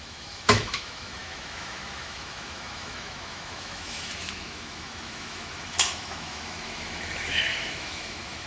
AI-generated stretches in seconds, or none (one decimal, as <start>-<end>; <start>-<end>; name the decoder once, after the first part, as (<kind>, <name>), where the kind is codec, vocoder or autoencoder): 0.0-8.5 (autoencoder, DAC-VAE)